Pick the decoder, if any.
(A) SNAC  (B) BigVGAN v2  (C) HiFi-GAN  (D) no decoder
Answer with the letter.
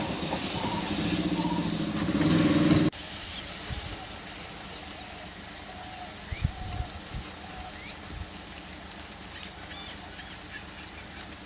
D